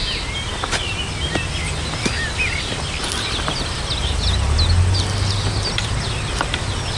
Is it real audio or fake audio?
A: real